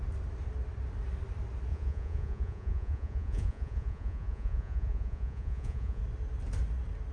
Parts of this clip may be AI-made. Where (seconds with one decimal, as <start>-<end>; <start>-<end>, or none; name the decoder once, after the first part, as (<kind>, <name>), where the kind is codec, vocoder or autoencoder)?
1.7-6.0 (vocoder, Vocos)